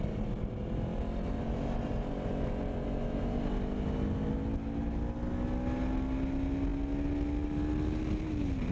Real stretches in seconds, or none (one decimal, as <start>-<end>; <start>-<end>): 0.0-8.7

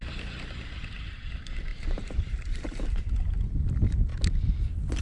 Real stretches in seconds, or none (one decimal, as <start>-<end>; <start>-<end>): 0.0-1.7; 3.0-5.0

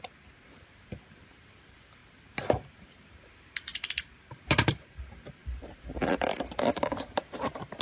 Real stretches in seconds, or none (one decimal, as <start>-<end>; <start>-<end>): 3.7-4.2

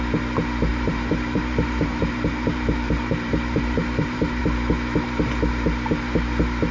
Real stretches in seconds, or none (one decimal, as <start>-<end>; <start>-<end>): 0.0-0.7; 4.4-6.7